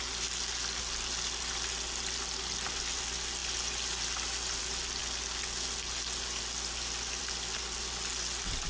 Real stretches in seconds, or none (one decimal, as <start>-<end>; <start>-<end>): 0.0-8.7